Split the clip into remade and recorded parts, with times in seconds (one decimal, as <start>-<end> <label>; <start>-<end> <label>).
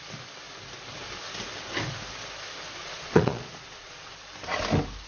0.0-2.8 recorded; 2.8-4.1 remade; 4.1-5.1 recorded